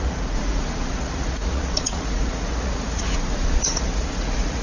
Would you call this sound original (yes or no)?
no